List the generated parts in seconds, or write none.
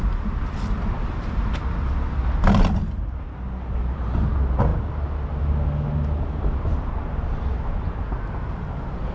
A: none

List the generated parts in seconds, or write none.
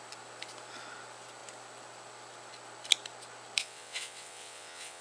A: 3.6-5.0 (vocoder, WaveNeXt)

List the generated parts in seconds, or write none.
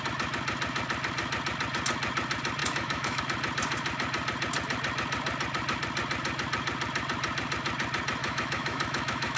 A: 2.6-3.2 (autoencoder, DAC-VAE); 8.2-9.4